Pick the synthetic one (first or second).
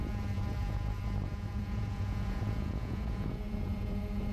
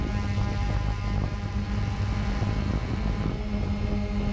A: first